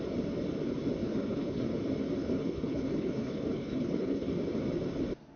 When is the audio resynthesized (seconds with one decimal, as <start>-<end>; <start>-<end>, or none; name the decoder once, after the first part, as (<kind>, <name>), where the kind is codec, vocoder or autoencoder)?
1.0-1.7 (codec, HILCodec); 2.2-4.3